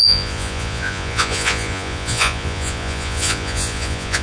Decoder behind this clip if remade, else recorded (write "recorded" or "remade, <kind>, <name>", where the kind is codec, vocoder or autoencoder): remade, vocoder, Vocos